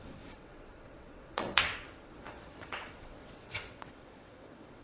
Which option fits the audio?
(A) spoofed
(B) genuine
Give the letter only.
A